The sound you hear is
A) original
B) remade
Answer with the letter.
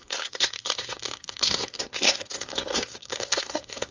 B